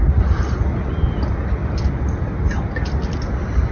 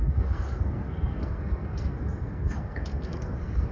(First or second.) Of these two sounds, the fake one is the second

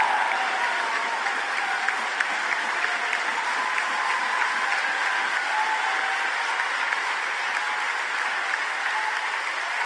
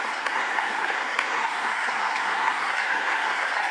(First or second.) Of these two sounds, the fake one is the second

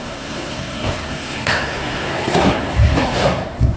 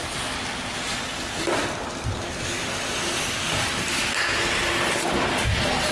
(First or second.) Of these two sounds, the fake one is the first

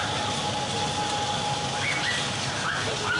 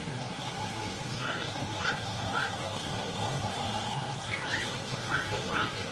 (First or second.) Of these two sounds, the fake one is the second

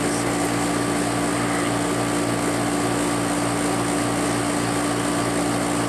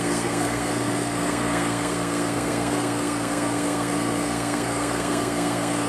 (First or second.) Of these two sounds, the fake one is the second